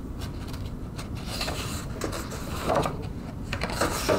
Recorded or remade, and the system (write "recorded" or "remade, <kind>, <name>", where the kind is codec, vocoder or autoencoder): recorded